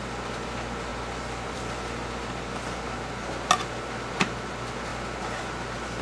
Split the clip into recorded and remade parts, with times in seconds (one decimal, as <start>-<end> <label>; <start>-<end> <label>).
0.0-6.0 recorded